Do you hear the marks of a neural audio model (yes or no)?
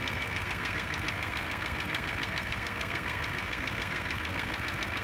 yes